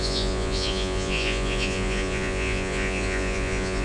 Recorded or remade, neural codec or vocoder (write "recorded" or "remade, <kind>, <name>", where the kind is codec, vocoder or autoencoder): remade, vocoder, Vocos